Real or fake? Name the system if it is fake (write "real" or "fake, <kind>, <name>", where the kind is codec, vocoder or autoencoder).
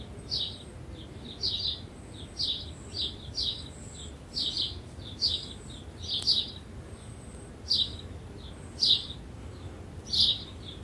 real